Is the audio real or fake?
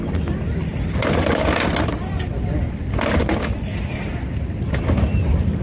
real